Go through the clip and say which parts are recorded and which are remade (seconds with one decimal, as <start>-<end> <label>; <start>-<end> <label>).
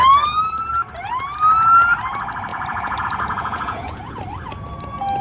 0.0-2.5 recorded; 2.5-4.1 remade; 4.1-5.2 recorded